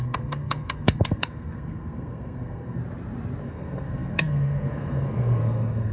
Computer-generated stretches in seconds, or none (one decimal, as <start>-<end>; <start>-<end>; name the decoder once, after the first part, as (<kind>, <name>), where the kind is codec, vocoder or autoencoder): 0.0-2.8 (codec, SNAC); 3.4-5.9